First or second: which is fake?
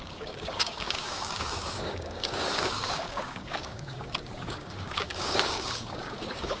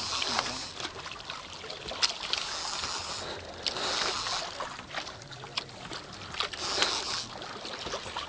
first